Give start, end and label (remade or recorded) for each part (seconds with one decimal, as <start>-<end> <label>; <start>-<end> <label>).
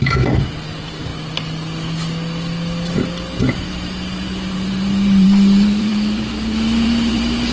0.0-1.1 remade; 1.1-3.5 recorded; 3.5-7.5 remade